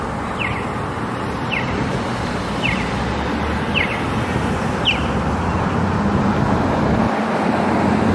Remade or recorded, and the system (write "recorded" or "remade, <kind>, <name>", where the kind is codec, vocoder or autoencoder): recorded